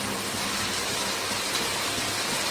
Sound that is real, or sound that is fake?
real